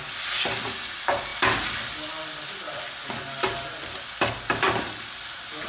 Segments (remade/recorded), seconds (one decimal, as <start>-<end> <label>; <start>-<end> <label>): 0.0-5.7 recorded